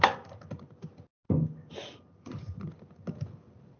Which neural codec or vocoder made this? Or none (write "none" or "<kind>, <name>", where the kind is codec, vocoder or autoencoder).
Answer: none